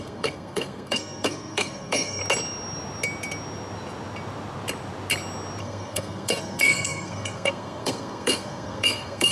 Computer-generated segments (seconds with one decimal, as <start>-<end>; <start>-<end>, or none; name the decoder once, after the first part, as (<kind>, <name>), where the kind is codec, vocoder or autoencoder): 0.0-2.2 (codec, SNAC); 5.6-9.3

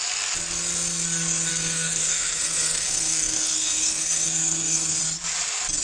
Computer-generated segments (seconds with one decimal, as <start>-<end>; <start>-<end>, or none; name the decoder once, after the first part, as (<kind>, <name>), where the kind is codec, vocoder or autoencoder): 1.5-5.0 (codec, SNAC)